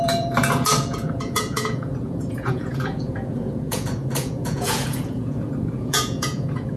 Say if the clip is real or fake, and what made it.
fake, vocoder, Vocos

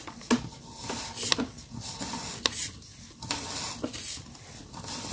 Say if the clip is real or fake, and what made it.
real